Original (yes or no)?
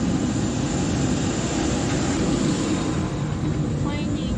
yes